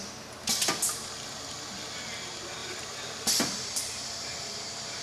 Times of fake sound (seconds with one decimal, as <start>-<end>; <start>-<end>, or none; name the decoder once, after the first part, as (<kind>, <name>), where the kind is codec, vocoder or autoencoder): 2.6-5.0 (vocoder, BigVGAN v2)